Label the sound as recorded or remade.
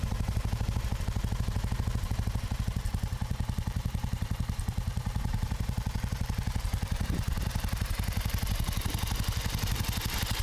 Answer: remade